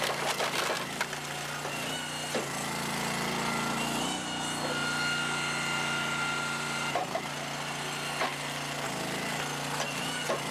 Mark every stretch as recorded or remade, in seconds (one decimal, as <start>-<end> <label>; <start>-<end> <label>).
0.0-10.5 recorded